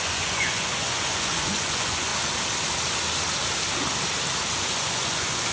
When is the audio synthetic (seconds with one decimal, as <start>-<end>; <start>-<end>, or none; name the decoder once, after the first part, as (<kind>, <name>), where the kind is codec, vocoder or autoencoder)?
0.0-2.1 (vocoder, Vocos); 4.6-5.5